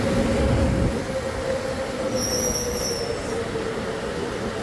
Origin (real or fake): real